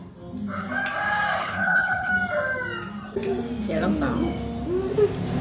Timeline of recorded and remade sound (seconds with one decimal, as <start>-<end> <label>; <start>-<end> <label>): 0.0-1.4 recorded; 1.4-2.1 remade; 2.1-5.4 recorded